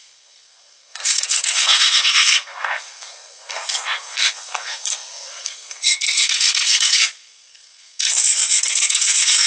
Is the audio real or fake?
fake